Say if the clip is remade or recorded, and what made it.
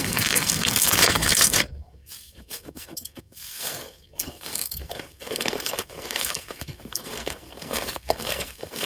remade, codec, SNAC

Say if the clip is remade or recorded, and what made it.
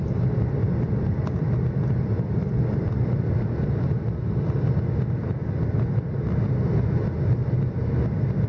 recorded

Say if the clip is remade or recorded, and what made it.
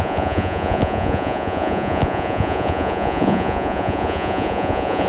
remade, vocoder, Vocos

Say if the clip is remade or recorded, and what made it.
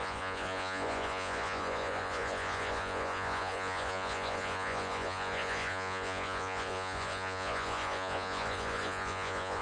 remade, vocoder, Vocos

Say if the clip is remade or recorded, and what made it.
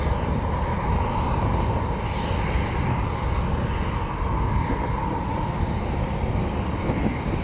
recorded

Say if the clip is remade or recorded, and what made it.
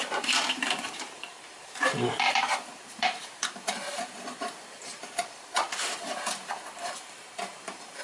remade, vocoder, BigVGAN v2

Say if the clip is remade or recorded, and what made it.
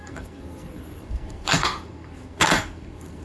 remade, codec, SNAC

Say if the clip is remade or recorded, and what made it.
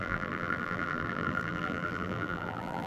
remade, vocoder, BigVGAN v2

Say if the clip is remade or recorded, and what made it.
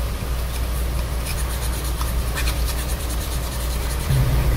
remade, vocoder, BigVGAN v2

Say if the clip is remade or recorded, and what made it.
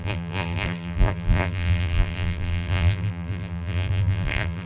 remade, vocoder, BigVGAN v2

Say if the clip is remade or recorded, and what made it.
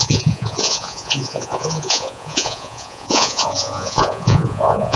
remade, vocoder, Vocos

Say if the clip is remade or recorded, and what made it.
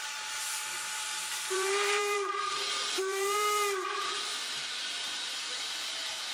remade, vocoder, BigVGAN v2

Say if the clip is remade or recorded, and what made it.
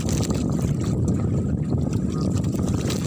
recorded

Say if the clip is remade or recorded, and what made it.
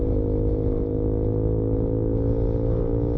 recorded